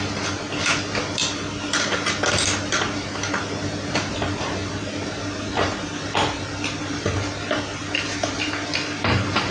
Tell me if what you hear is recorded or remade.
recorded